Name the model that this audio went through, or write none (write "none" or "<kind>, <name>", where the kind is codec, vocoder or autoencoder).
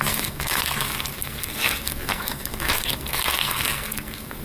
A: codec, SNAC